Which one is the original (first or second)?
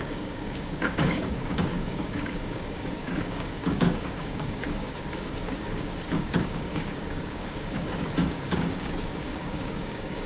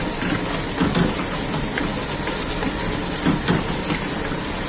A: second